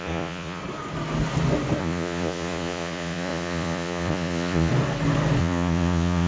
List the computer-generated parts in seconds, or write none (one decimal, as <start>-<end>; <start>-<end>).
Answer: 0.0-0.6; 1.8-4.7; 5.4-6.3